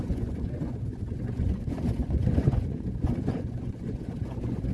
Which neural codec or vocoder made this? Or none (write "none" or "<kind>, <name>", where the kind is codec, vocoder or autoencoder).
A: vocoder, Vocos